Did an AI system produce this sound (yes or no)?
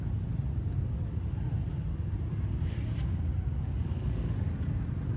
no